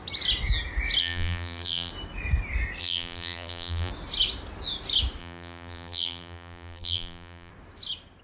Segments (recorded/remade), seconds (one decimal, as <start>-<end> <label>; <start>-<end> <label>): 0.0-1.0 recorded; 1.0-1.9 remade; 1.9-2.8 recorded; 2.8-3.9 remade; 3.9-5.2 recorded; 5.2-7.5 remade; 7.5-8.2 recorded